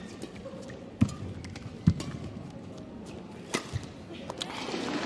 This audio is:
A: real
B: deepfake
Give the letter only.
A